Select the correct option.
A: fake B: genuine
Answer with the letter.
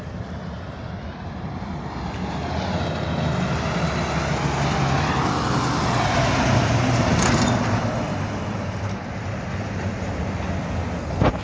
B